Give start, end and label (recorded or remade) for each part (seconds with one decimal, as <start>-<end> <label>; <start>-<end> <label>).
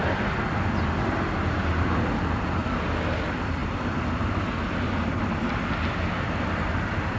0.0-7.2 recorded